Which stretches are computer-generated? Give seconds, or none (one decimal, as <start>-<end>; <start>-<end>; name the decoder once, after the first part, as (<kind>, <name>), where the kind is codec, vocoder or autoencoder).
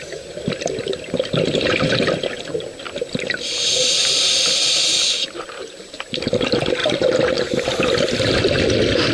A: none